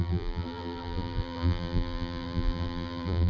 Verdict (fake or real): fake